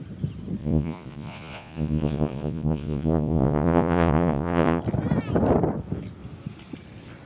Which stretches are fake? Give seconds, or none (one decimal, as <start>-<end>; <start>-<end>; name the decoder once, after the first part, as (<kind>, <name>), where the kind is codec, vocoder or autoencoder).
0.6-4.8 (vocoder, Vocos)